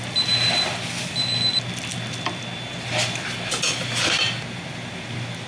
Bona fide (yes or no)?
yes